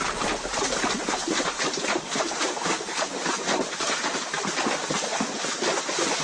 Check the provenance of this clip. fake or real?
real